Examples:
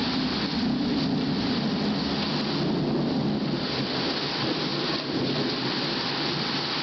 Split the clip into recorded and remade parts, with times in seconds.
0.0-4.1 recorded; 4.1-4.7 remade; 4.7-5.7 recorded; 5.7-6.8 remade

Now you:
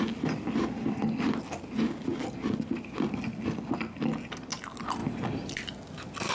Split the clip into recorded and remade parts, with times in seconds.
0.0-6.3 recorded

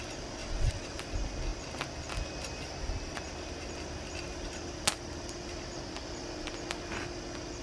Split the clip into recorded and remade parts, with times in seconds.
0.0-0.4 recorded; 0.4-1.0 remade; 1.0-7.6 recorded